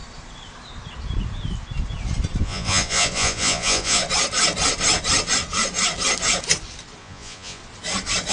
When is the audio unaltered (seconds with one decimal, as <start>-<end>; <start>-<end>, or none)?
0.0-2.4; 4.0-7.0; 7.6-8.3